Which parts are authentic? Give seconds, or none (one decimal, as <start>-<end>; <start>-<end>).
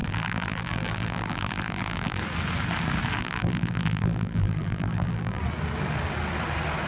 2.2-3.2; 5.4-6.9